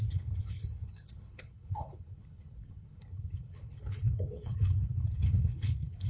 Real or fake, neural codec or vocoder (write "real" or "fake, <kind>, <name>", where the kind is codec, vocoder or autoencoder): fake, codec, HILCodec